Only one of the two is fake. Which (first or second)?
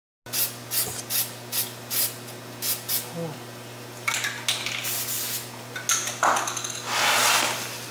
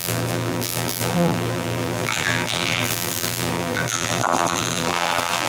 second